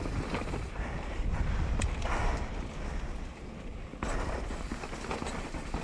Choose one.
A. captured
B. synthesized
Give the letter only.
A